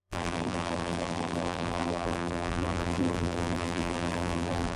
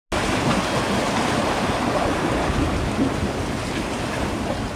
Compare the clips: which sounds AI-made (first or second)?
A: first